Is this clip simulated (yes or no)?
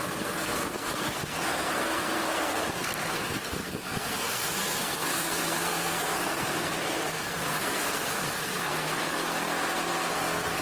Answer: yes